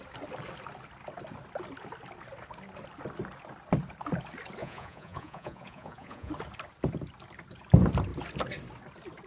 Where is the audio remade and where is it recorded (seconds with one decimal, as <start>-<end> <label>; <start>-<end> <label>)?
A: 0.0-4.6 recorded; 4.6-6.3 remade; 6.3-9.3 recorded